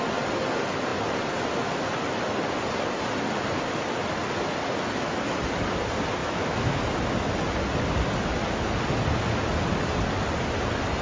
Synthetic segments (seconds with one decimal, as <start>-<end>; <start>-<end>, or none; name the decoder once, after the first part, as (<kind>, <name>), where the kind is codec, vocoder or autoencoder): 6.2-6.8 (autoencoder, DAC-VAE)